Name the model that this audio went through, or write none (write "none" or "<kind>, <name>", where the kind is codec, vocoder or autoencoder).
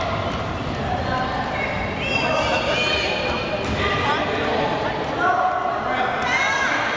none